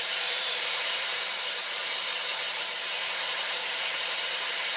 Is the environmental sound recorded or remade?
remade